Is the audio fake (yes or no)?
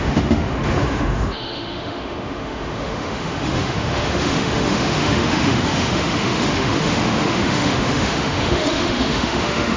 yes